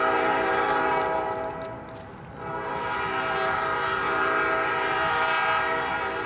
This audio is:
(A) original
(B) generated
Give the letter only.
A